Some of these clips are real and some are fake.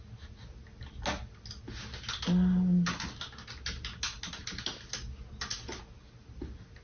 real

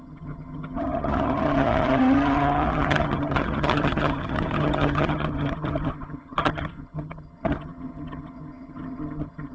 fake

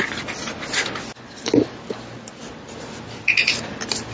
real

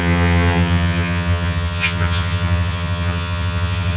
fake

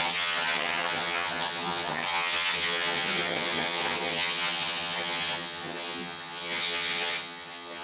fake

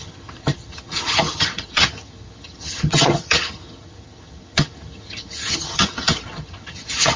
fake